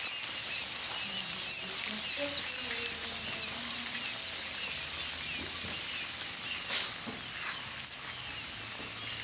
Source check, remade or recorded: recorded